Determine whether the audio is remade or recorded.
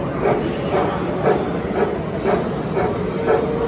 recorded